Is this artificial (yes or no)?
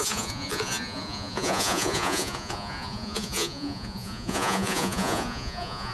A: yes